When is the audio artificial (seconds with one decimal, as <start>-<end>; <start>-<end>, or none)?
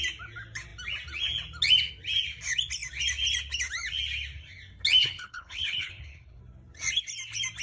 5.0-6.4